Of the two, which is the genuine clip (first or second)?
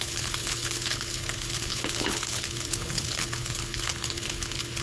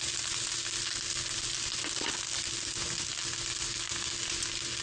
second